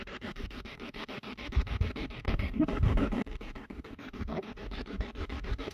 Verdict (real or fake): fake